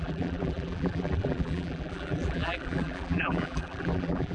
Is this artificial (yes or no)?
yes